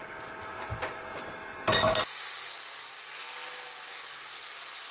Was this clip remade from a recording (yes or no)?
no